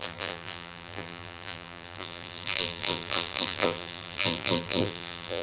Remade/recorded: remade